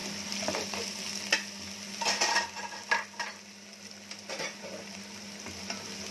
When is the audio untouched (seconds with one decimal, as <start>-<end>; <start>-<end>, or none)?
0.0-6.1